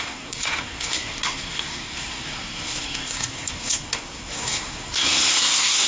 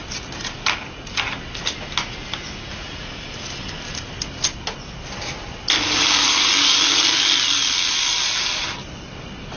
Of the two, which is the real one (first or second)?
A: second